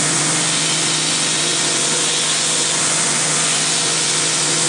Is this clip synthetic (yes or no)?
yes